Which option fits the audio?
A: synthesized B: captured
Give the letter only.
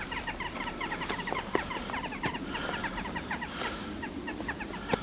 B